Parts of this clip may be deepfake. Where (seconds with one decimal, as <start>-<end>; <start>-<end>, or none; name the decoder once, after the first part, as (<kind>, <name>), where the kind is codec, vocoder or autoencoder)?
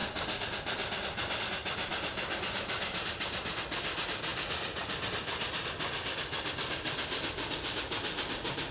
none